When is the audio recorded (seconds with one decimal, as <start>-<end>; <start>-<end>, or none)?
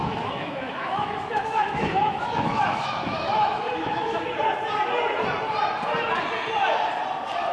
4.2-7.5